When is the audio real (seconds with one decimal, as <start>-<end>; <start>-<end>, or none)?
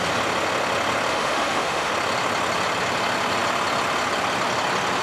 0.0-1.1; 1.9-5.0